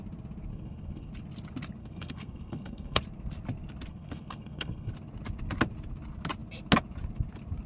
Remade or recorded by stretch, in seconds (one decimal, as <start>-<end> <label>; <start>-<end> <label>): 0.0-0.5 recorded; 0.5-1.1 remade; 1.1-1.8 recorded; 1.8-3.0 remade; 3.0-3.9 recorded; 3.9-4.9 remade; 4.9-7.7 recorded